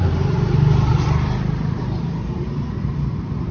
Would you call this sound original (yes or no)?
no